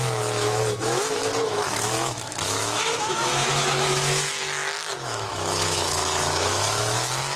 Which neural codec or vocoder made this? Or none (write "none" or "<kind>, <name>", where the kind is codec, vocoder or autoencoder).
autoencoder, DAC-VAE